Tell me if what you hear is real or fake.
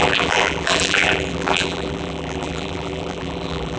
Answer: fake